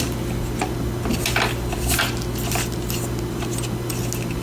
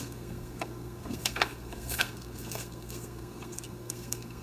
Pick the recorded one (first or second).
first